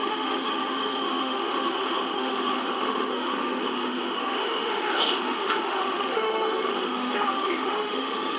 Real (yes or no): no